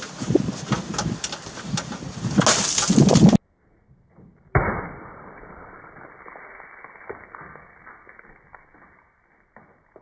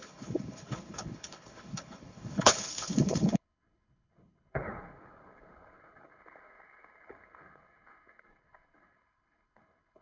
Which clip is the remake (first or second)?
second